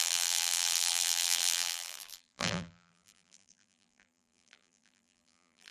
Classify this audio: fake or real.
fake